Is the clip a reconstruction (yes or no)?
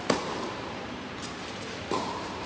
yes